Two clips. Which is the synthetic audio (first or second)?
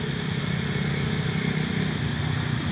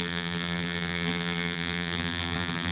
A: second